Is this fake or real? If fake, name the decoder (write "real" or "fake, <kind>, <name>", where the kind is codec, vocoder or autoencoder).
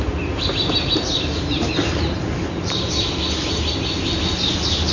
real